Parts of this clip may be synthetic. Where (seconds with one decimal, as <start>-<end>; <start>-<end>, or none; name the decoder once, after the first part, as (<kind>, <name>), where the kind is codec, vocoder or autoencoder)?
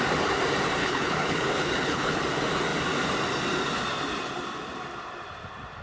0.8-2.2 (codec, HILCodec)